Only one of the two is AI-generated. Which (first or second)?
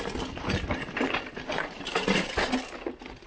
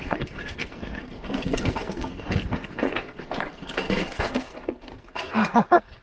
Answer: second